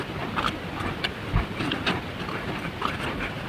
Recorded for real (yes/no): yes